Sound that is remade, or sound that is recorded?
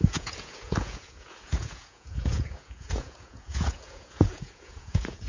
remade